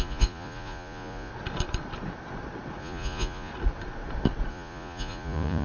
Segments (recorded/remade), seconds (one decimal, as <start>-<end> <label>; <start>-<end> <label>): 0.0-1.3 remade; 1.3-2.8 recorded; 2.8-3.5 remade; 3.5-4.5 recorded; 4.5-5.6 remade